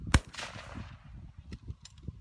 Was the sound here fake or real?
real